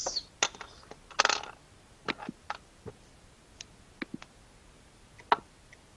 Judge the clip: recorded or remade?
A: recorded